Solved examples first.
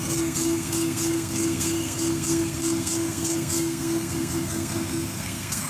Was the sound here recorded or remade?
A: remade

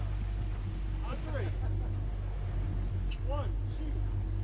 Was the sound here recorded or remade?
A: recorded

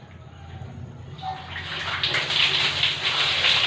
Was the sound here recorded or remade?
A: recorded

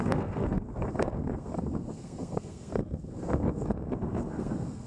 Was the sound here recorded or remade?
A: remade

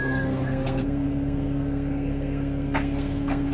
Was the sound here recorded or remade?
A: remade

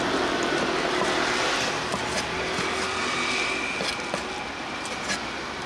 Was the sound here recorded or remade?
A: recorded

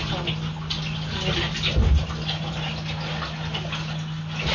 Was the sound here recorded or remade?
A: recorded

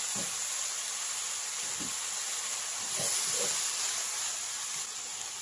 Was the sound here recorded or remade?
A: recorded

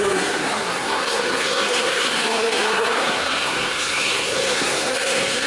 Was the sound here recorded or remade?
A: remade